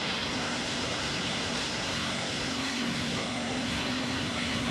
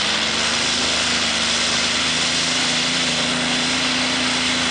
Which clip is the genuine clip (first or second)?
second